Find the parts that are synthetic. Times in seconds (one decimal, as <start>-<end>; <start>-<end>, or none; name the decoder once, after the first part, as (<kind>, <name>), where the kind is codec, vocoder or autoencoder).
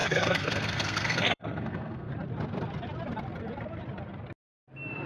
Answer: 0.0-2.1 (codec, SNAC)